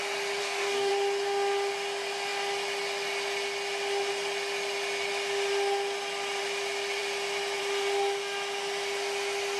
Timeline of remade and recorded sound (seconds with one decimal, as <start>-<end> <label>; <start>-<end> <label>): 0.0-0.4 recorded; 0.4-0.9 remade; 0.9-9.6 recorded